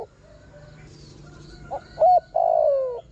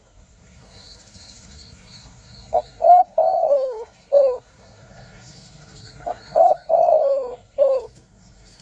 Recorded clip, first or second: first